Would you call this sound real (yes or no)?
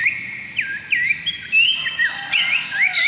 no